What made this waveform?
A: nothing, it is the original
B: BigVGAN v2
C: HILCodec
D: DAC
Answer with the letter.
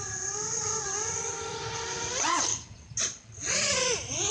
B